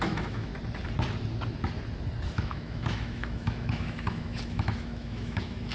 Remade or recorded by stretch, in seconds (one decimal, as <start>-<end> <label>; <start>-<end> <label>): 0.0-0.5 remade; 0.5-2.3 recorded; 2.3-5.7 remade